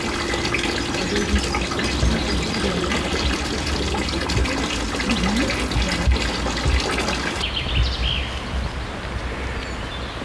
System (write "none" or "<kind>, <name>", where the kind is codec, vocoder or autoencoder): none